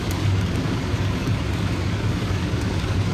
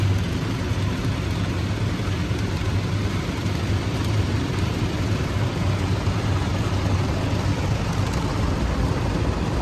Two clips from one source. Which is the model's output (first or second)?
first